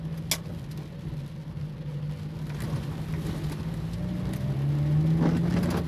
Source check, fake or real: real